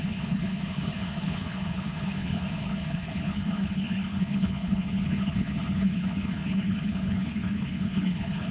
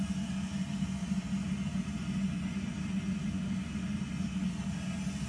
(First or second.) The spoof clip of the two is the first